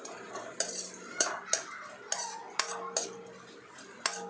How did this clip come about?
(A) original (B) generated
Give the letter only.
A